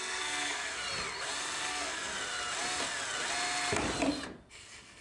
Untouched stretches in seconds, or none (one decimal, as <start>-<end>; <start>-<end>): 0.8-1.7; 2.1-4.5